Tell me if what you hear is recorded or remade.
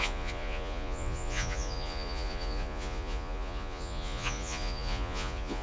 remade